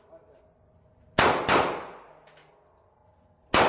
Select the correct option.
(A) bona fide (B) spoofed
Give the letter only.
A